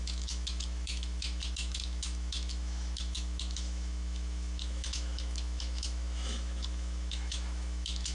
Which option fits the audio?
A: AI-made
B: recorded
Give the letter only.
A